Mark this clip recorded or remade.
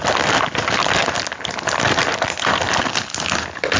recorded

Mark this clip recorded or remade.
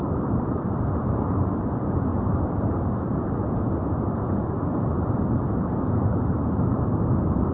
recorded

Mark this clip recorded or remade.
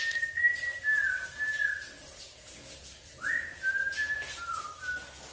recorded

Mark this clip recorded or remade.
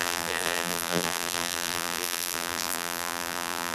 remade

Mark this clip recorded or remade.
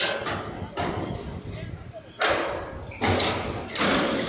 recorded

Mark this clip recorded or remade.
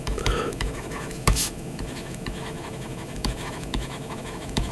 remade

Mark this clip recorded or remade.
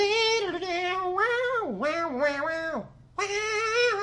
recorded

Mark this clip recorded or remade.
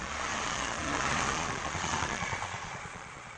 remade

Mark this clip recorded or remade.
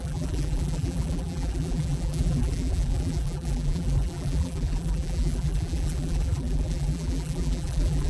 remade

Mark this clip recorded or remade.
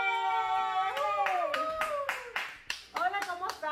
recorded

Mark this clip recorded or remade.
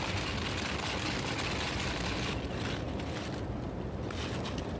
recorded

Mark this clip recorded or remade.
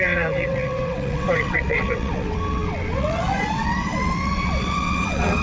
remade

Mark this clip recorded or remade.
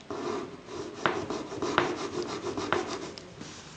recorded